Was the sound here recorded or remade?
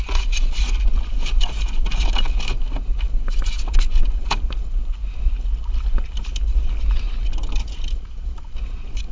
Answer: recorded